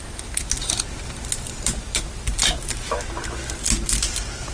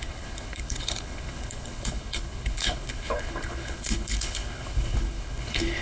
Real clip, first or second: first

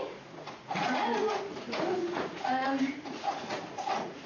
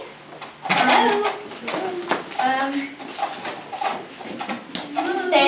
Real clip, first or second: second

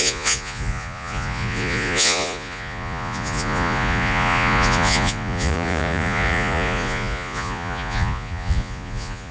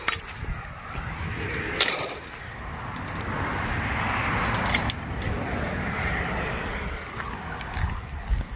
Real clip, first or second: second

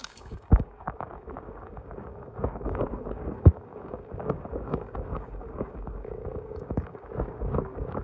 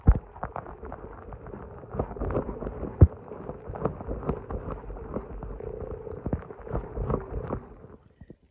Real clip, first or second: second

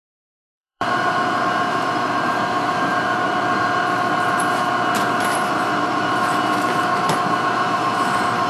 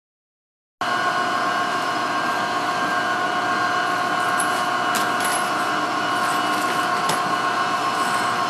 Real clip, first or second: second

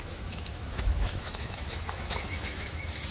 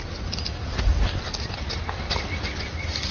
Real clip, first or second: second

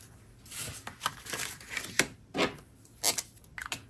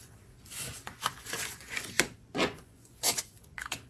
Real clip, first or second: first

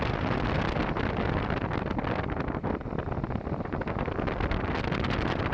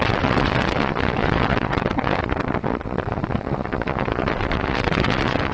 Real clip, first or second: first